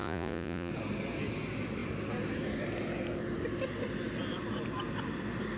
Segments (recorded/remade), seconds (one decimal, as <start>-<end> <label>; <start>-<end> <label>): 0.0-0.7 remade; 0.7-5.6 recorded